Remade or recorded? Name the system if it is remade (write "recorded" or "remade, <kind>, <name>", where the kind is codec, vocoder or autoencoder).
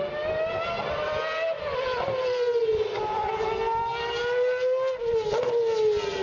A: recorded